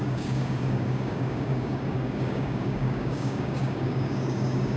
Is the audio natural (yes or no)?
no